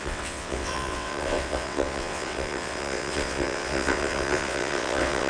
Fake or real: fake